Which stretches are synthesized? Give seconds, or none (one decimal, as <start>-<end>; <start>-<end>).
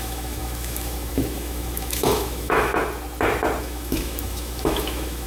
0.0-2.7; 3.6-5.3